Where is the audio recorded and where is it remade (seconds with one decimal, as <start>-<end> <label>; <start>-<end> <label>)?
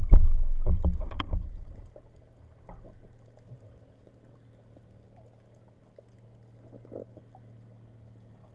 0.0-8.5 recorded